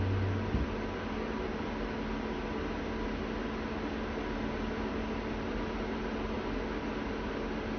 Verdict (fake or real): real